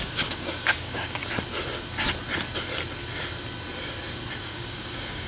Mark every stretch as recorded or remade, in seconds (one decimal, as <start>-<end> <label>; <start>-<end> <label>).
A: 0.0-1.2 remade; 1.2-4.4 recorded; 4.4-5.3 remade